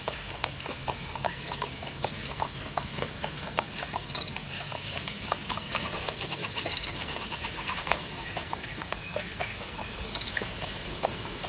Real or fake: fake